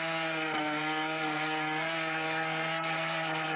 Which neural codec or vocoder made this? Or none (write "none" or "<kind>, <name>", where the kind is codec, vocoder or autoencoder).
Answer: codec, SNAC